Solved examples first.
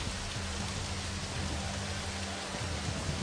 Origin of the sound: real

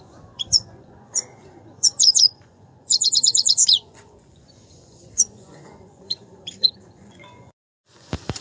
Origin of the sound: fake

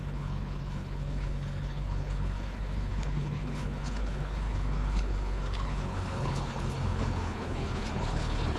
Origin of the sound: fake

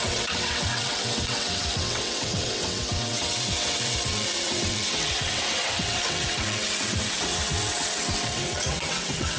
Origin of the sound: fake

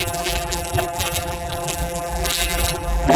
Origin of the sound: fake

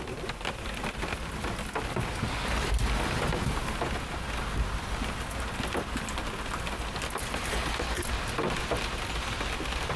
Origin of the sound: real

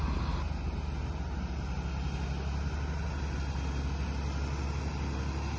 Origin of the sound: real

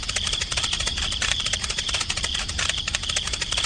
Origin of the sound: fake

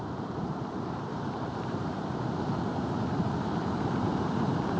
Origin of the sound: fake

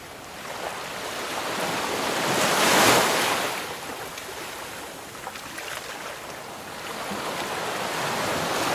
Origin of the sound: real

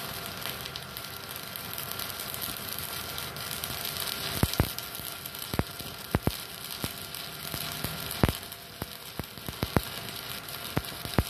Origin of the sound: real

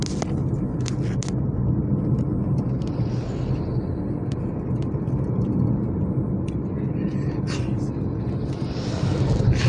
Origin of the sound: real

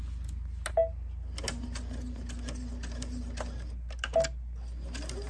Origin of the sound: real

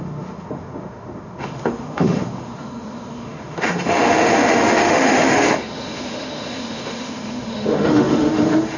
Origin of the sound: fake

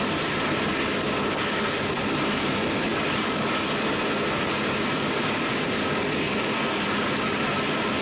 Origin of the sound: real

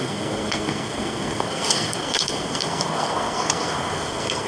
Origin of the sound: fake